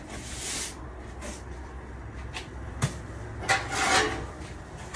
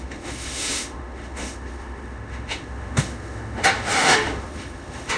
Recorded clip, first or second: first